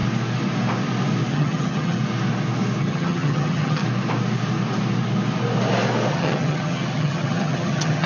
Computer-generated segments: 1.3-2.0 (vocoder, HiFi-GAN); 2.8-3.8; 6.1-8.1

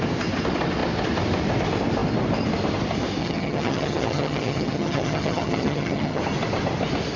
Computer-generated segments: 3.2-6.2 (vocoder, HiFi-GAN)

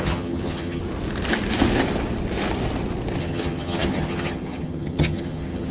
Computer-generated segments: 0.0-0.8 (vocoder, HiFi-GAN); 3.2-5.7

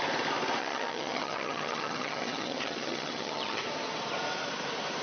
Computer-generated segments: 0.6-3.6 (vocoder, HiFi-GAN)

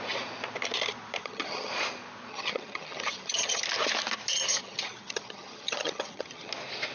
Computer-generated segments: 1.2-1.7 (vocoder, HiFi-GAN); 2.3-3.6; 4.5-6.5

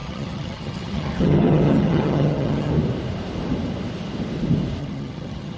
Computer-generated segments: 0.0-2.7 (vocoder, HiFi-GAN); 4.8-5.6

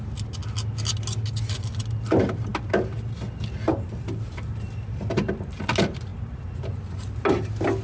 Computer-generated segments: none